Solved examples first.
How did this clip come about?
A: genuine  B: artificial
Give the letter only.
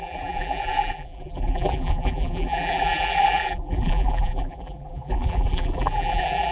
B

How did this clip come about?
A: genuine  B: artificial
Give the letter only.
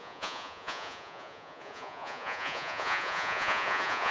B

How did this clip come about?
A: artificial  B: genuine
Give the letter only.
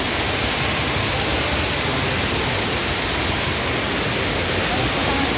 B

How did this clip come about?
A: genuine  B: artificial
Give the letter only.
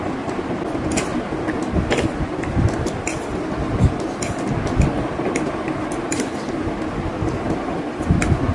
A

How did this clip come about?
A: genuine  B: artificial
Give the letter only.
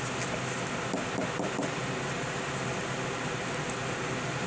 A